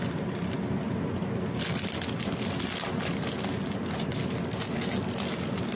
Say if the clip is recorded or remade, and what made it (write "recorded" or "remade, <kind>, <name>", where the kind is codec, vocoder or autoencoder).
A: recorded